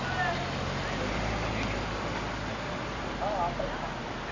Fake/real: real